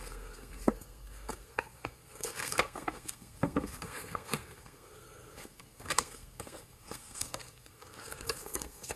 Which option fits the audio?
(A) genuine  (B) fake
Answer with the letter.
B